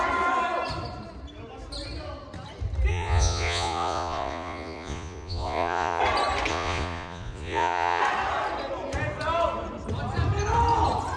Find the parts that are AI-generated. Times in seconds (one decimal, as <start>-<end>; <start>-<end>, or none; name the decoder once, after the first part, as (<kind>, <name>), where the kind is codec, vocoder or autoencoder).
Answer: 2.9-6.0 (vocoder, Vocos); 6.5-8.0